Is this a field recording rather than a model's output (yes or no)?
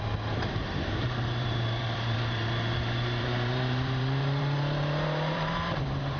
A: no